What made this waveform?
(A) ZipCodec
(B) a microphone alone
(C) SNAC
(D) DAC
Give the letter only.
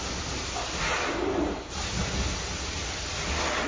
B